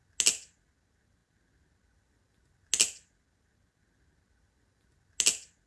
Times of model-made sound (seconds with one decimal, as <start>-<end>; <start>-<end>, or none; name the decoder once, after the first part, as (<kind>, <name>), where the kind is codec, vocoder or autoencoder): none